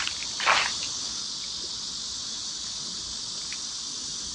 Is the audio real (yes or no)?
yes